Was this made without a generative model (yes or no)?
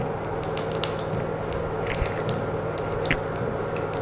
yes